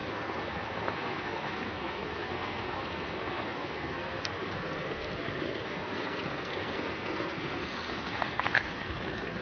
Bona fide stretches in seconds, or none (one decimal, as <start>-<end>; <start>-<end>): none